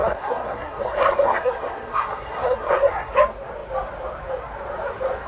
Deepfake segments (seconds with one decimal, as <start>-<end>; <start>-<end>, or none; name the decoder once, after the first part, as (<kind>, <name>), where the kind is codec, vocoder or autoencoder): 0.0-3.1 (codec, SNAC)